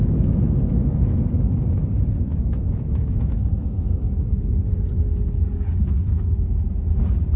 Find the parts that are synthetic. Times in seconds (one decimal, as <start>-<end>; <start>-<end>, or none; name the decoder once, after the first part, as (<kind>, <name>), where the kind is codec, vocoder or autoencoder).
0.0-1.5 (autoencoder, DAC-VAE); 2.3-4.4; 6.1-6.6